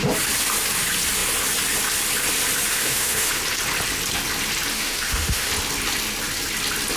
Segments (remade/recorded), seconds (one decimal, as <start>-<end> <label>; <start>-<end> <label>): 0.0-2.7 recorded; 2.7-3.3 remade; 3.3-4.7 recorded; 4.7-5.5 remade; 5.5-7.0 recorded